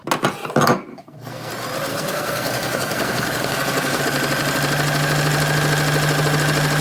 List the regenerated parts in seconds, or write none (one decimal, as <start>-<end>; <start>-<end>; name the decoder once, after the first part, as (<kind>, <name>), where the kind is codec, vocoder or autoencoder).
0.9-1.5 (codec, SNAC); 1.9-4.0